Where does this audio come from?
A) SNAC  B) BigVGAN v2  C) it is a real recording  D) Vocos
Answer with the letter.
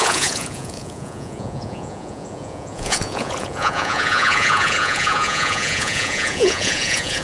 D